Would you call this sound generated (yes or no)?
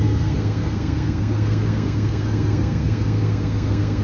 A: yes